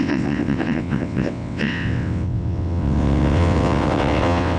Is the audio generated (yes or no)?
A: yes